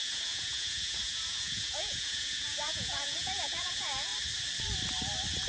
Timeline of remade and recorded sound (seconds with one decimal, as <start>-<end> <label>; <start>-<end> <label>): 0.0-4.1 remade; 4.1-5.5 recorded